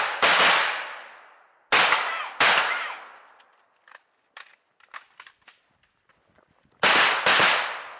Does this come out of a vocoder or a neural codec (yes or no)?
no